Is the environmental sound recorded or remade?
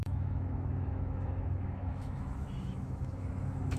remade